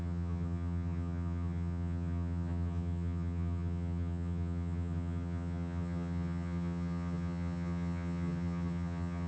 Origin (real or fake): fake